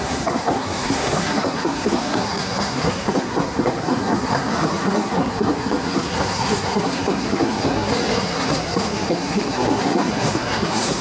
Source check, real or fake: fake